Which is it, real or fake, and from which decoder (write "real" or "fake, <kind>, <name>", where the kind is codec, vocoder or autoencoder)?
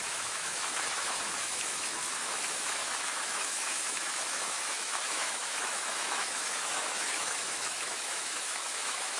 fake, autoencoder, DAC-VAE